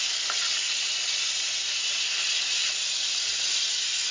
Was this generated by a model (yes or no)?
no